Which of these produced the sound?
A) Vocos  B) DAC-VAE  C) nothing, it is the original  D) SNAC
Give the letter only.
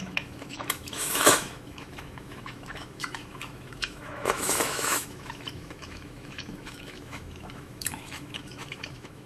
B